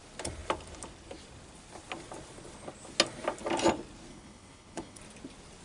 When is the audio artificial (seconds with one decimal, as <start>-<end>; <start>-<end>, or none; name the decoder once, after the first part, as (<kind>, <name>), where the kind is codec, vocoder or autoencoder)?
4.1-5.0 (codec, HILCodec)